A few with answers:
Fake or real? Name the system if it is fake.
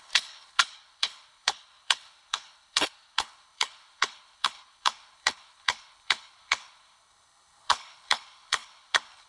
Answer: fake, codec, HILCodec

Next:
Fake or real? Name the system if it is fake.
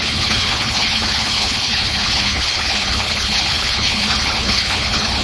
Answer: fake, codec, HILCodec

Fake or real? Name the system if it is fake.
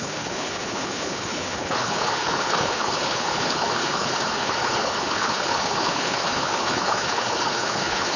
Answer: fake, codec, HILCodec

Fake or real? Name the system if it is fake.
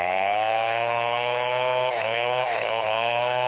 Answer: fake, codec, HILCodec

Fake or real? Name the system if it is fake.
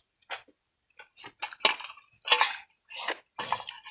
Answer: real